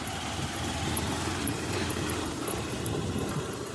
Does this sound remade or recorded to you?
remade